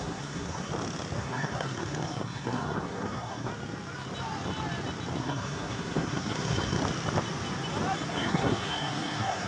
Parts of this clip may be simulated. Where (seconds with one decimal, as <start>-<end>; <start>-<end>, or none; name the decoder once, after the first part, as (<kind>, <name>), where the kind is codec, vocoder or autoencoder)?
0.0-0.7 (codec, SNAC); 1.2-3.5; 5.2-6.8; 8.1-9.5